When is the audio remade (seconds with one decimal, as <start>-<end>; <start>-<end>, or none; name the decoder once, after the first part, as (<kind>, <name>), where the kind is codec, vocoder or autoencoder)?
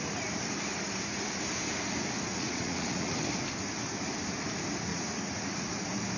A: 2.3-3.2 (vocoder, Vocos); 4.9-5.7